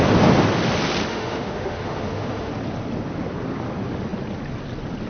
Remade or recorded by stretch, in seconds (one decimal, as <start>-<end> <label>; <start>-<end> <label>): 0.0-1.1 recorded; 1.1-2.5 remade; 2.5-5.1 recorded